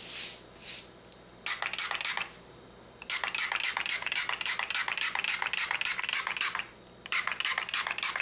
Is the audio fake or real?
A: real